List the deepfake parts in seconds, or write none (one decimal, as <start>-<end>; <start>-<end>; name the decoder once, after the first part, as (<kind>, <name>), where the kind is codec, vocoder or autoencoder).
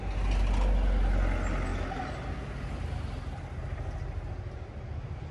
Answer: none